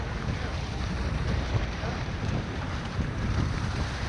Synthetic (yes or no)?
yes